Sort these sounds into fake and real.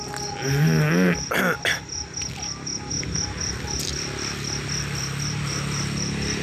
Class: real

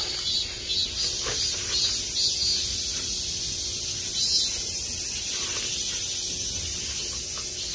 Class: real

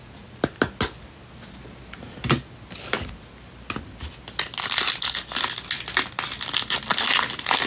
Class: real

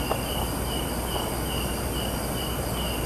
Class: real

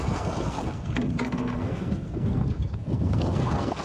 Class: fake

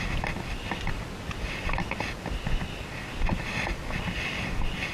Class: real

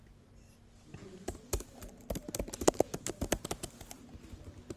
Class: real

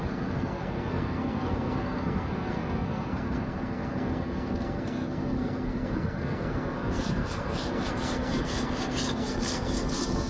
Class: fake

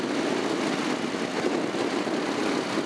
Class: real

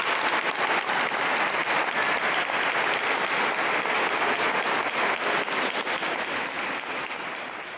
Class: real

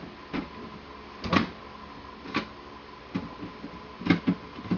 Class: real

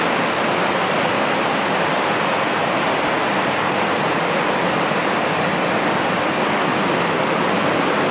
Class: real